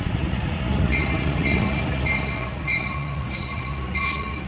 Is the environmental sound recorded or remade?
remade